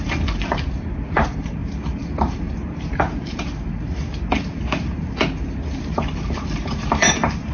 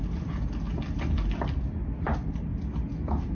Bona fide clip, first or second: second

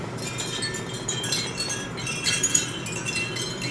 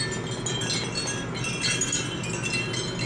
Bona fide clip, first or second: second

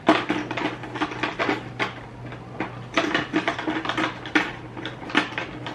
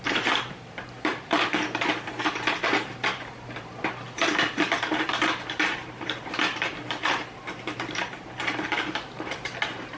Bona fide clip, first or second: first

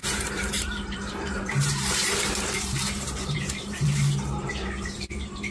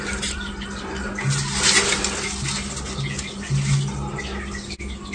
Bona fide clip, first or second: second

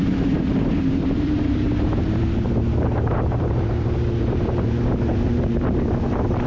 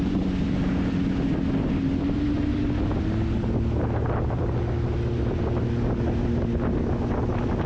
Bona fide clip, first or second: second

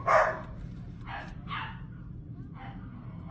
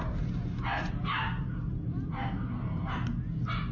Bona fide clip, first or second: second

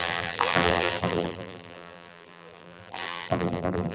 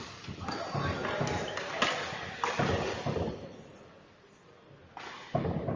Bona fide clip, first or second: second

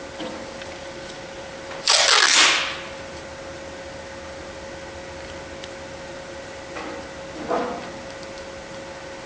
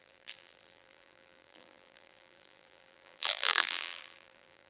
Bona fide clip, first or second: first